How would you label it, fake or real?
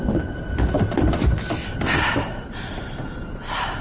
real